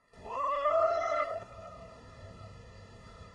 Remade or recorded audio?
remade